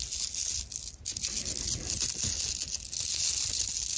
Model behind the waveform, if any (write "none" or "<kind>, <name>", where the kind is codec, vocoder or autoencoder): none